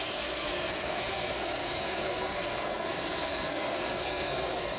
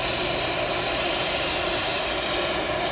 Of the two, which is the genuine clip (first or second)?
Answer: second